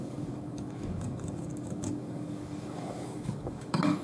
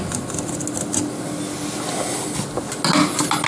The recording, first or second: second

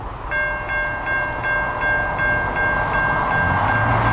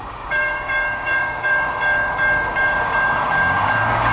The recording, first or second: first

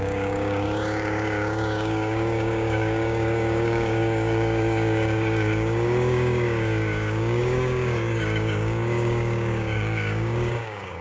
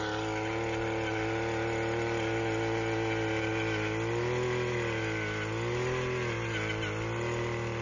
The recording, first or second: second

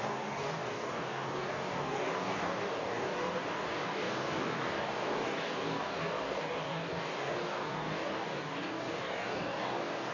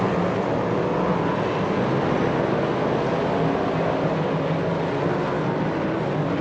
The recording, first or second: second